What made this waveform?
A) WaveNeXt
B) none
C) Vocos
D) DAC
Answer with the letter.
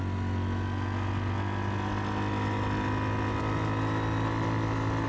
B